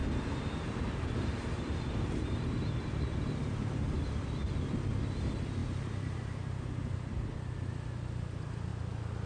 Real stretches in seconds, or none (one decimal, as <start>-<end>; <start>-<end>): 4.5-5.6; 7.7-9.3